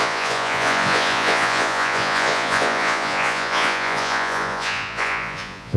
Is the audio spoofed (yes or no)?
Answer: yes